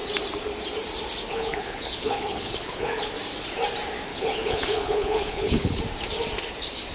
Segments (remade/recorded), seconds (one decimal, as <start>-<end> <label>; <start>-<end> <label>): 0.0-1.3 recorded; 1.3-3.1 remade; 3.1-4.1 recorded; 4.1-5.8 remade; 5.8-6.9 recorded